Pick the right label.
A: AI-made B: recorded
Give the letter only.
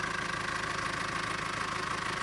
B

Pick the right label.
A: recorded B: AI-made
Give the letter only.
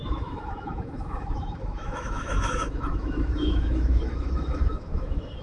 B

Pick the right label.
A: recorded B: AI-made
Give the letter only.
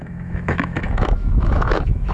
B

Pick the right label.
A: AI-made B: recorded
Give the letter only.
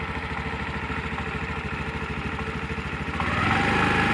B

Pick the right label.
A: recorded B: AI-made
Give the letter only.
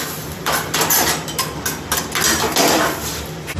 A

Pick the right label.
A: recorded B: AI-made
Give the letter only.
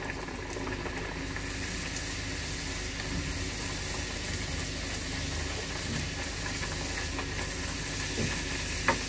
A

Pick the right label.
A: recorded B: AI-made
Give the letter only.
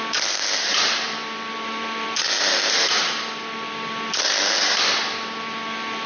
A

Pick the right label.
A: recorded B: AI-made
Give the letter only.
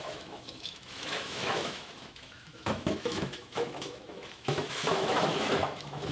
B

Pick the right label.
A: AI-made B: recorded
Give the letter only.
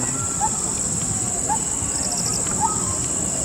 B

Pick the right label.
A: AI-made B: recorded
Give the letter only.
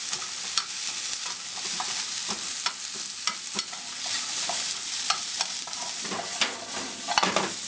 B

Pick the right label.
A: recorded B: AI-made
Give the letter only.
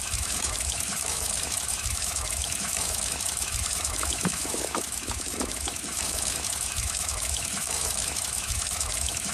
B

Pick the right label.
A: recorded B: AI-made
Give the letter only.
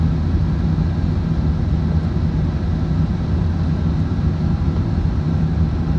A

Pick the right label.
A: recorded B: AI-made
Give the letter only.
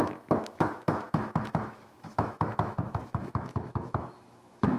B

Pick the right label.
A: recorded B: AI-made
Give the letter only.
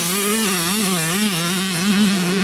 A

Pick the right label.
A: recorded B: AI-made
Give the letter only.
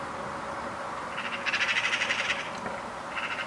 A